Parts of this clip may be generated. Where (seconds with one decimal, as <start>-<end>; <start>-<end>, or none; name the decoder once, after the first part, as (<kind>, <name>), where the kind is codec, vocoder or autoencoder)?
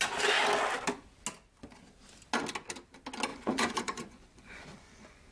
3.3-5.3 (vocoder, Vocos)